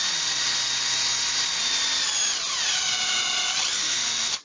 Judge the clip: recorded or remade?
recorded